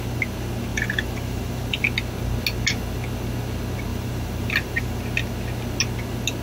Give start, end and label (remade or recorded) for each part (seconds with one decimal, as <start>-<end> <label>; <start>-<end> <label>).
0.0-0.7 recorded; 0.7-1.8 remade; 1.8-3.9 recorded; 3.9-5.0 remade; 5.0-6.4 recorded